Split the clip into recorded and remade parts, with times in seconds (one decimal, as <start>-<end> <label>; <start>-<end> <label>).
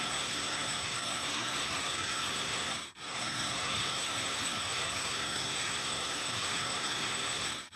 0.0-7.8 remade